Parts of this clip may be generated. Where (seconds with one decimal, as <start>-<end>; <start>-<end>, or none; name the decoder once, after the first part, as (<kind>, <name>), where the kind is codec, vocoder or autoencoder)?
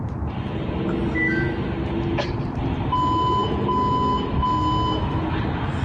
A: none